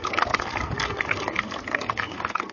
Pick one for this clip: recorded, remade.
remade